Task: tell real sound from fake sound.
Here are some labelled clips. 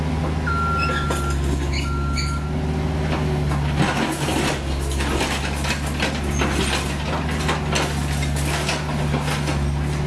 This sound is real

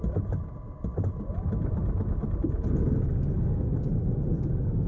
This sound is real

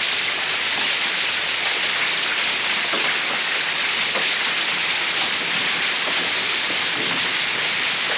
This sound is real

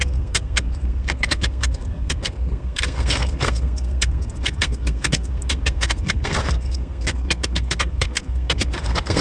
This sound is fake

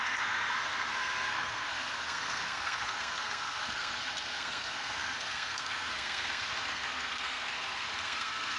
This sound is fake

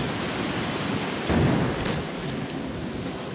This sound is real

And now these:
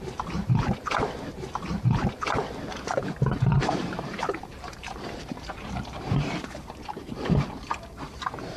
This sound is fake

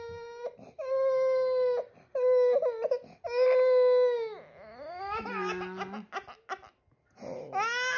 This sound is real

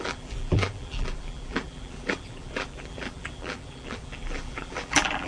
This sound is fake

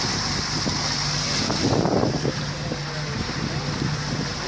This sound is real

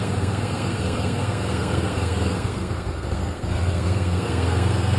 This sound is fake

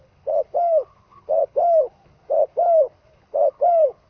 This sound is fake